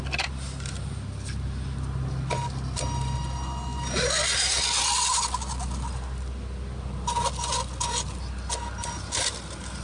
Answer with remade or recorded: recorded